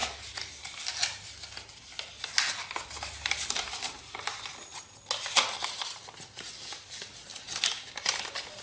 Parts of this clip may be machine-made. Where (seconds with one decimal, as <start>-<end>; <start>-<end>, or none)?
none